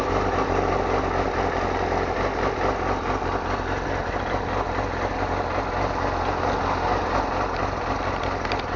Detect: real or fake real